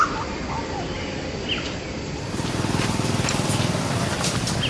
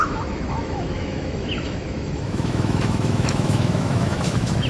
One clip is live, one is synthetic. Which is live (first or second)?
first